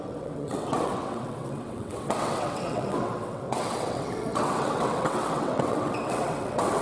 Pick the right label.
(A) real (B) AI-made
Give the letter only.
B